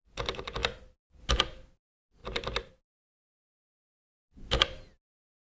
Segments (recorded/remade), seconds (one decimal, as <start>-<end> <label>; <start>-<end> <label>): 0.0-5.4 recorded